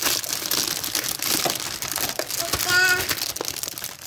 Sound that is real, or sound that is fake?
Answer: real